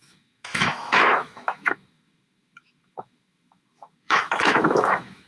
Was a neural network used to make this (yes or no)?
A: yes